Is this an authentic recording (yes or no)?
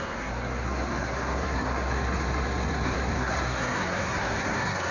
no